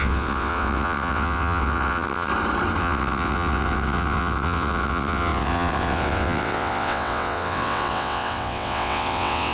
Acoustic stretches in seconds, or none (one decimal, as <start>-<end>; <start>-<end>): 2.3-2.8